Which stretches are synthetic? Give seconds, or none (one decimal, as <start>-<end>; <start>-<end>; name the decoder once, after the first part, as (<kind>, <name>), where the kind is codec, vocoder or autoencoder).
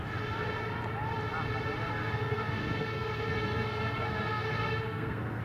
1.9-5.4 (codec, SNAC)